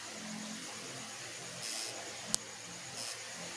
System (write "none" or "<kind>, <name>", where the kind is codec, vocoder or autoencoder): none